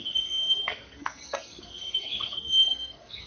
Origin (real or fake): fake